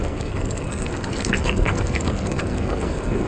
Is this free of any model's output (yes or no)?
no